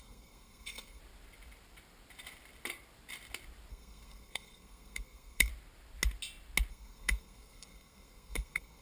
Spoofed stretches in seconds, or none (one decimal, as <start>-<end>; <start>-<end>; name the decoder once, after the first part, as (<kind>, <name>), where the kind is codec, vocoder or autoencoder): 0.0-1.0 (codec, SNAC); 3.7-5.5; 6.7-8.8